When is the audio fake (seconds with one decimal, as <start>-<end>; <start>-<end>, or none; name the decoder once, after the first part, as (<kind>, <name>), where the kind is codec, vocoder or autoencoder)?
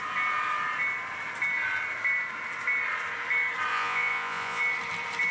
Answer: 3.7-4.6 (vocoder, Vocos)